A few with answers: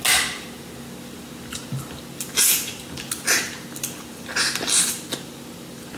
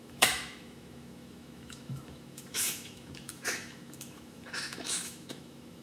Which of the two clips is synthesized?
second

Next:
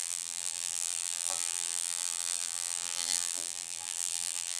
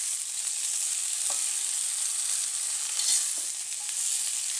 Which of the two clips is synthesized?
first